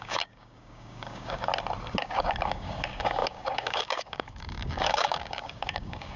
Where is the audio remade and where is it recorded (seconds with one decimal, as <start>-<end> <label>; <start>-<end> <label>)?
0.0-1.5 remade; 1.5-2.0 recorded; 2.0-6.2 remade